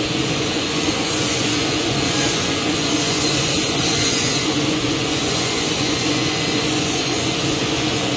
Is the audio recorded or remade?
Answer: remade